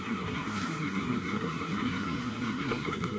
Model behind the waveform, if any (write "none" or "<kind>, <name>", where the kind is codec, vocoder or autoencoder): codec, SNAC